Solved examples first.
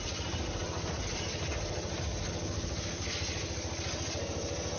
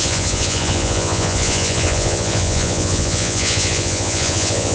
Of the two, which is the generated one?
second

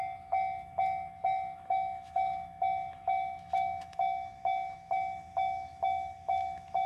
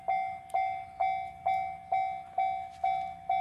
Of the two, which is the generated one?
first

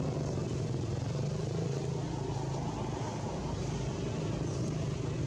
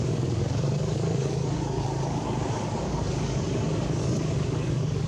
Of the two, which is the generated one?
second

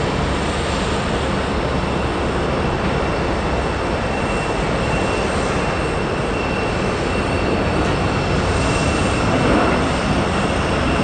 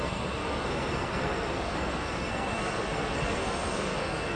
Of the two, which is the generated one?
second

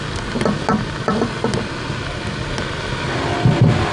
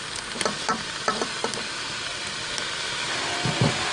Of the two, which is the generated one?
second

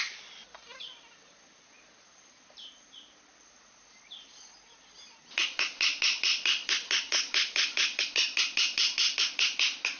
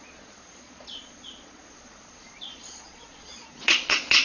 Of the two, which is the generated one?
second